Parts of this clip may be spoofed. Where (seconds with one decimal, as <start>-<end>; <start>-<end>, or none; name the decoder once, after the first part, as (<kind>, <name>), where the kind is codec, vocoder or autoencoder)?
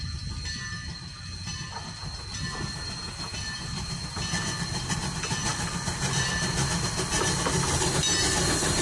none